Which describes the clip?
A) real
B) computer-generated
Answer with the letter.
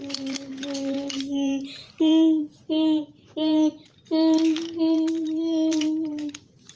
B